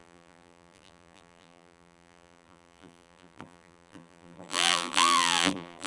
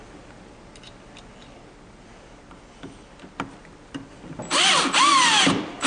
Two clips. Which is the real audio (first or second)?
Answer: second